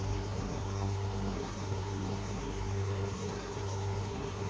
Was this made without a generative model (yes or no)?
no